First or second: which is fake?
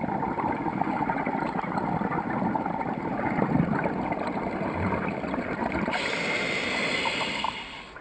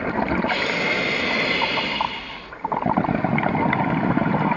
first